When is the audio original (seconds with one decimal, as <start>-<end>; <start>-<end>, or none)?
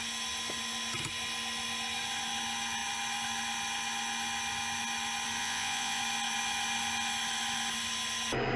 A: 0.0-5.4; 6.0-8.6